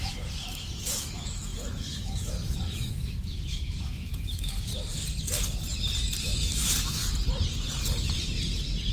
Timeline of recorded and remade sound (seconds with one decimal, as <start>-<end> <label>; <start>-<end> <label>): 0.0-4.7 remade; 4.7-6.2 recorded; 6.2-7.0 remade; 7.0-8.9 recorded